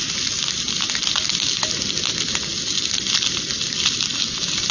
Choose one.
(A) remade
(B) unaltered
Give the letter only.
B